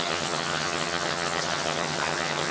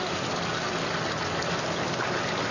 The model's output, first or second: first